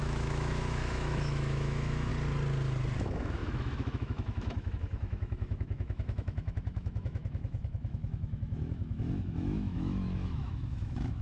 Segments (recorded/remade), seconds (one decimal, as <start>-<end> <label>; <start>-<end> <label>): 0.0-2.1 remade; 2.1-3.0 recorded; 3.0-11.2 remade